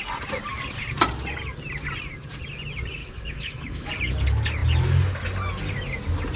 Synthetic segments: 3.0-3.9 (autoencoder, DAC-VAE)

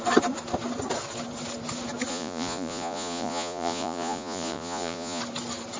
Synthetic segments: 2.1-5.2 (vocoder, Vocos)

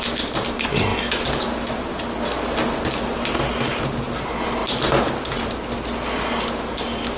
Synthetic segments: none

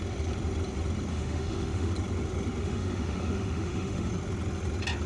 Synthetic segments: 1.1-1.9 (autoencoder, DAC-VAE); 2.6-4.1

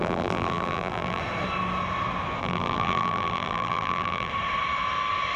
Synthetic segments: 0.0-1.2 (vocoder, BigVGAN v2); 2.4-4.3

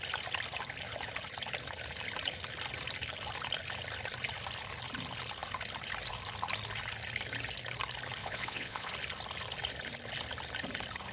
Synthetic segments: 8.2-8.9 (vocoder, Vocos)

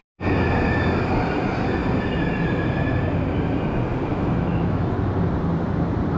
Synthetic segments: 4.1-4.9 (autoencoder, DAC-VAE)

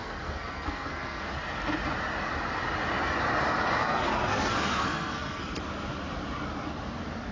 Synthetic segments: 0.0-1.3 (codec, SNAC); 3.8-5.6